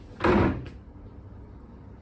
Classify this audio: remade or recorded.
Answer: recorded